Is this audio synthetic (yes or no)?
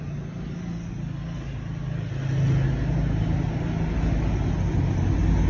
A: no